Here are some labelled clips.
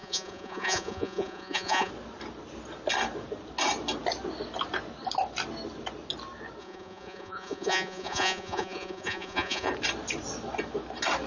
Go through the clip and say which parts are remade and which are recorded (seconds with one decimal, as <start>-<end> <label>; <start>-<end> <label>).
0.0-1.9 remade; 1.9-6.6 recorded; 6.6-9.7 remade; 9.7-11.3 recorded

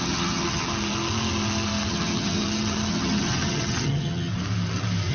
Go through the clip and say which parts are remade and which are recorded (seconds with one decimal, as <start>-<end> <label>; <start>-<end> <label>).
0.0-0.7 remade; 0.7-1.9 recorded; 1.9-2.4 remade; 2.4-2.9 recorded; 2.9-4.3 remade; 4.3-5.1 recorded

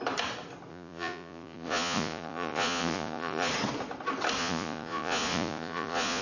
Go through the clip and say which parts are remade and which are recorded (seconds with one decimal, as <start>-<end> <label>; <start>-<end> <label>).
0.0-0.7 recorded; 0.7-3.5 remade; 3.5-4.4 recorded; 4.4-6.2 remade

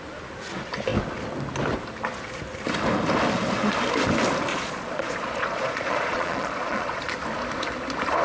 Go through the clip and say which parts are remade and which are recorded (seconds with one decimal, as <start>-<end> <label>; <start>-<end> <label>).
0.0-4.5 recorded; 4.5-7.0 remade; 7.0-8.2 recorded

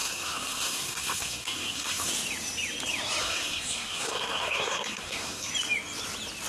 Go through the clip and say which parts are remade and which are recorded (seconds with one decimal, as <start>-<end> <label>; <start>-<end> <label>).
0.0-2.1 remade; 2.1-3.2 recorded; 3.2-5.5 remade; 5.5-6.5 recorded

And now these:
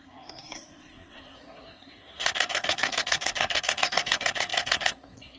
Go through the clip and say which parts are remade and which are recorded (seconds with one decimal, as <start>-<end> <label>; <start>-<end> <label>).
0.0-5.4 remade

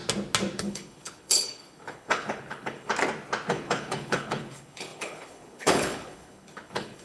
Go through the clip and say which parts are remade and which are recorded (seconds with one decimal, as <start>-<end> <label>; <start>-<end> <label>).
0.0-0.6 recorded; 0.6-2.9 remade; 2.9-3.5 recorded; 3.5-7.0 remade

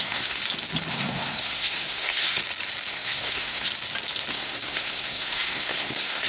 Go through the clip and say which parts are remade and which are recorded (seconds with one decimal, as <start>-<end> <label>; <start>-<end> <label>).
0.0-0.4 remade; 0.4-0.9 recorded; 0.9-2.4 remade; 2.4-2.9 recorded; 2.9-3.7 remade; 3.7-4.3 recorded; 4.3-6.3 remade